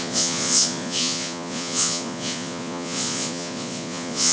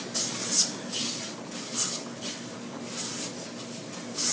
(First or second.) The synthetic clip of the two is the first